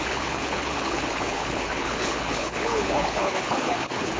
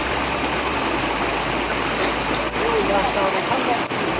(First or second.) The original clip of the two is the second